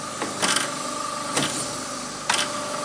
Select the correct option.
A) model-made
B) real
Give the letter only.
B